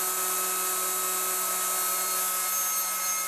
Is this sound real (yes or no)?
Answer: yes